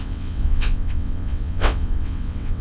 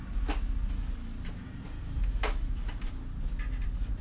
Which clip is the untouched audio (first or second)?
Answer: second